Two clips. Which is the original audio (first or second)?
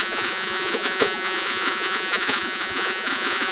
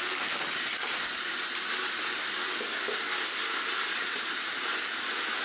second